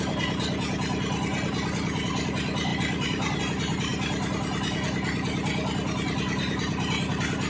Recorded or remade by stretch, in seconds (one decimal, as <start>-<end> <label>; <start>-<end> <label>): 0.0-1.3 recorded; 1.3-2.3 remade; 2.3-2.7 recorded; 2.7-3.4 remade; 3.4-7.5 recorded